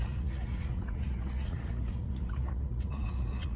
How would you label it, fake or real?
fake